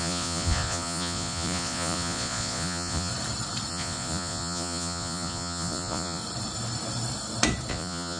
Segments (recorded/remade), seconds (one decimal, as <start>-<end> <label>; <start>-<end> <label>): 0.0-3.1 remade; 3.1-3.7 recorded; 3.7-6.2 remade; 6.2-7.7 recorded; 7.7-8.2 remade